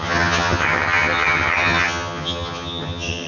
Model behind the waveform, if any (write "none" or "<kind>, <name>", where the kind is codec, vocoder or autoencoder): vocoder, HiFi-GAN